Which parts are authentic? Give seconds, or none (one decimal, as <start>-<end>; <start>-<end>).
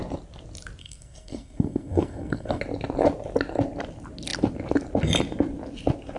0.0-0.8; 2.6-6.2